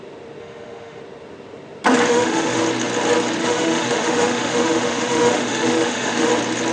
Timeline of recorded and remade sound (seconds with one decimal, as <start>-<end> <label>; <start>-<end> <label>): 0.0-0.4 recorded; 0.4-1.0 remade; 1.0-2.1 recorded; 2.1-2.6 remade; 2.6-3.4 recorded; 3.4-6.3 remade; 6.3-6.7 recorded